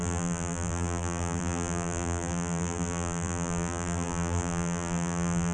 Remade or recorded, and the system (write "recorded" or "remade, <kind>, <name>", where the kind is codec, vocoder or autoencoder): remade, vocoder, BigVGAN v2